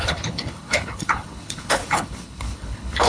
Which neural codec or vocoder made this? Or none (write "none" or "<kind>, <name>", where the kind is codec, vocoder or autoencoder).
codec, HILCodec